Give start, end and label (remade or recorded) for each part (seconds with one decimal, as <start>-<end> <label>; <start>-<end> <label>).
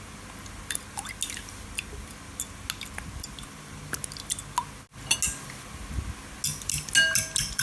0.0-7.6 recorded